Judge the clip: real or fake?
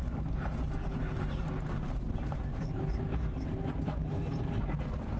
fake